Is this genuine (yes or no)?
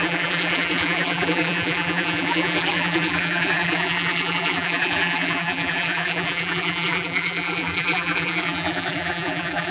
no